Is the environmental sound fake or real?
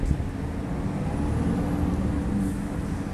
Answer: real